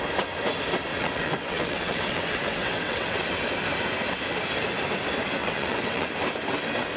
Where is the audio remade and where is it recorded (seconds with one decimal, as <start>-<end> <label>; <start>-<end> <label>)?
0.0-0.9 recorded; 0.9-3.4 remade; 3.4-5.4 recorded; 5.4-6.1 remade; 6.1-7.0 recorded